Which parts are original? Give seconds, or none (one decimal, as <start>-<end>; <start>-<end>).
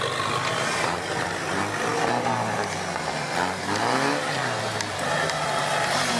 0.0-6.2